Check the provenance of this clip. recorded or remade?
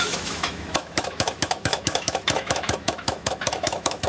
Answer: remade